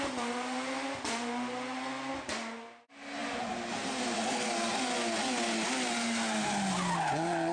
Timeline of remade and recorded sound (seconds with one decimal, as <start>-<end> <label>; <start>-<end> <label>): 0.0-7.5 recorded